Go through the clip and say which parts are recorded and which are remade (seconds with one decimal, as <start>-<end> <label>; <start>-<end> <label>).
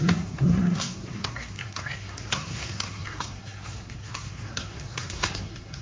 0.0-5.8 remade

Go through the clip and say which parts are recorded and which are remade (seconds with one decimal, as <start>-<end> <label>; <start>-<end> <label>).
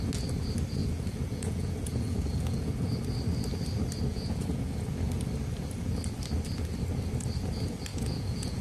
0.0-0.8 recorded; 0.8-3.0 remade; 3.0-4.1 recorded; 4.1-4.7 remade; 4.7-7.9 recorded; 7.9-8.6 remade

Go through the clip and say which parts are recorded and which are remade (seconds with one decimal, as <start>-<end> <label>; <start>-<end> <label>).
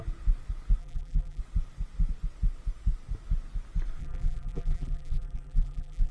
0.0-0.8 recorded; 0.8-1.4 remade; 1.4-4.0 recorded; 4.0-6.1 remade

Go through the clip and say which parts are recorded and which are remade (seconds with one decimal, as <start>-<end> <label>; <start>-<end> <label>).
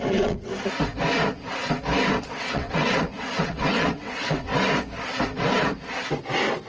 0.0-0.5 remade; 0.5-2.2 recorded; 2.2-4.5 remade; 4.5-6.3 recorded; 6.3-6.7 remade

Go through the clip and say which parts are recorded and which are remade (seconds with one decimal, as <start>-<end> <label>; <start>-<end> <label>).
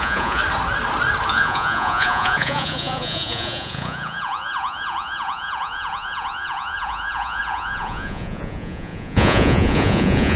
0.0-0.4 remade; 0.4-1.3 recorded; 1.3-10.4 remade